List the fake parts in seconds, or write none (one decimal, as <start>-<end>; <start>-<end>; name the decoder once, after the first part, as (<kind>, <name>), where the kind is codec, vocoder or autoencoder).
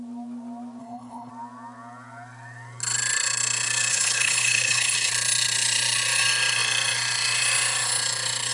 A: 0.8-1.3 (codec, HILCodec); 3.9-5.1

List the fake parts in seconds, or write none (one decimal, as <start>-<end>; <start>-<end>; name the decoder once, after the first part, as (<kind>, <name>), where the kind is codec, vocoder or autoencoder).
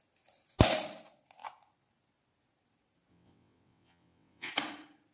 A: 3.1-4.5 (vocoder, WaveNeXt)